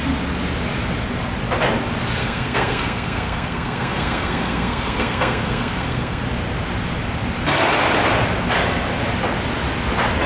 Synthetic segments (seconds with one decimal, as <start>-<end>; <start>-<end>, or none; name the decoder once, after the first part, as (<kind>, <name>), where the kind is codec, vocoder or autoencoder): 2.2-6.2 (codec, SNAC)